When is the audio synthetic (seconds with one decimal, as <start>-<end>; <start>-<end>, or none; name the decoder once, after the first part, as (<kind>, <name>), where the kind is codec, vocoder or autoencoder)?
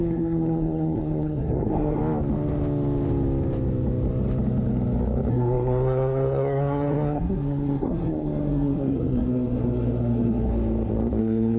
0.0-2.0 (codec, SNAC); 5.3-10.5; 11.2-11.6